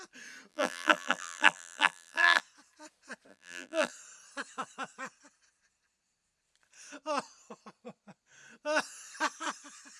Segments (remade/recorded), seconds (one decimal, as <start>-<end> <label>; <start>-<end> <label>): 0.0-0.5 recorded; 0.5-2.4 remade; 2.4-3.3 recorded; 3.3-3.9 remade; 3.9-10.0 recorded